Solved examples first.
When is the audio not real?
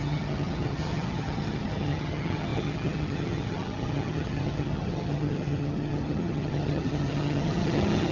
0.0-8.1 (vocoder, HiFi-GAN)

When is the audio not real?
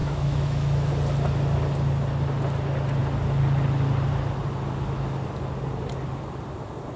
0.0-0.9 (autoencoder, DAC-VAE)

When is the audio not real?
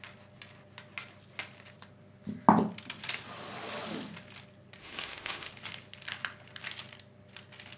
4.8-5.5 (autoencoder, DAC-VAE)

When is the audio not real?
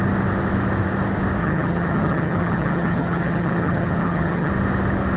1.4-4.5 (vocoder, HiFi-GAN)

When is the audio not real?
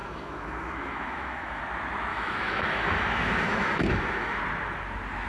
0.0-1.6 (autoencoder, DAC-VAE); 2.1-4.4